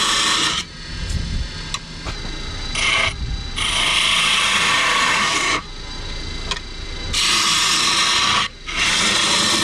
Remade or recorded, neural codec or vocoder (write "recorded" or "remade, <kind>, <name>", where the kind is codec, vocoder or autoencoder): recorded